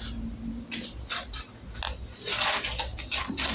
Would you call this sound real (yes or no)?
yes